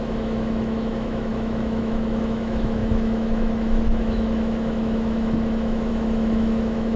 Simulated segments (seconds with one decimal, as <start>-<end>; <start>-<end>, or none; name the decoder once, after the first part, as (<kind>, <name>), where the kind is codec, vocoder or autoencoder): 0.0-7.0 (autoencoder, DAC-VAE)